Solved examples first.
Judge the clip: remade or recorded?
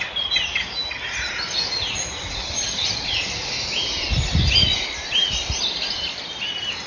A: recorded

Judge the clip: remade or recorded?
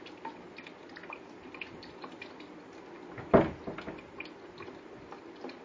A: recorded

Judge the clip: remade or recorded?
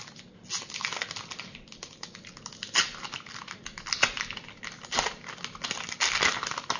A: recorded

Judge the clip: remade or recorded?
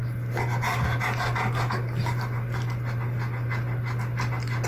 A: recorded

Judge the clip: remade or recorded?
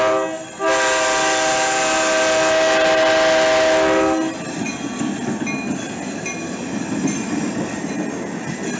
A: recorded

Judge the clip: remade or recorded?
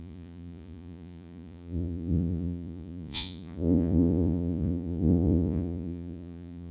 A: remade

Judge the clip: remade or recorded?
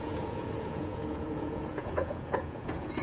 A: remade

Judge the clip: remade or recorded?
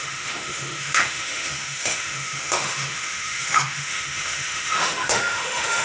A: remade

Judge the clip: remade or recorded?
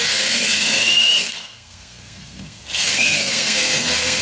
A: remade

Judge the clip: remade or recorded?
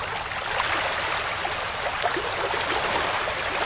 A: recorded